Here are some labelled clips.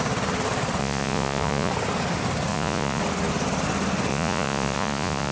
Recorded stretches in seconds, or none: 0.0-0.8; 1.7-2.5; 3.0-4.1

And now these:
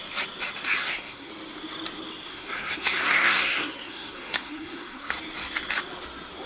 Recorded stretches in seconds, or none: 0.0-0.8; 1.3-2.3; 5.1-6.5